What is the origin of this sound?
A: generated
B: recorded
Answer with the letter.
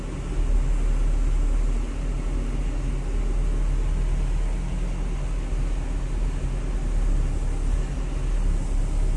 B